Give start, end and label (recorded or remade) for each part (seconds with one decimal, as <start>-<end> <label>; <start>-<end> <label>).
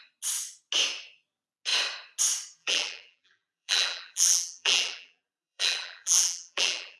0.0-2.6 recorded; 2.6-7.0 remade